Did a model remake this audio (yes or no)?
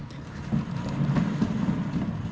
no